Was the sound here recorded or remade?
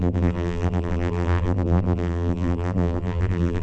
remade